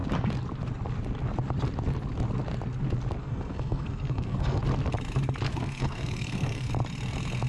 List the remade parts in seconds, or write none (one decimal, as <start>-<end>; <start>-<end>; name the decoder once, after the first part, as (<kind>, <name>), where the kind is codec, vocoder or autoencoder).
3.2-4.6 (codec, SNAC); 5.5-6.7